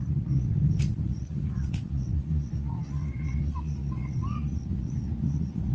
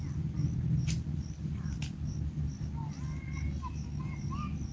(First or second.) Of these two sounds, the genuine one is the second